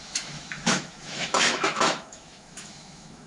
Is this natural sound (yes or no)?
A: no